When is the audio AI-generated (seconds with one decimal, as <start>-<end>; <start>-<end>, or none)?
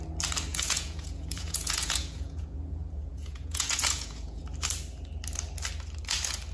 0.5-4.4